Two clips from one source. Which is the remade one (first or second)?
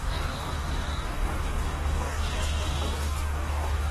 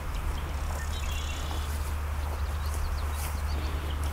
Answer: first